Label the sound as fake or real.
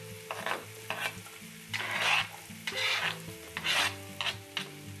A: real